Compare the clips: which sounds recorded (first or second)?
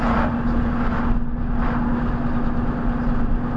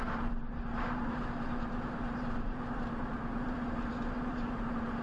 first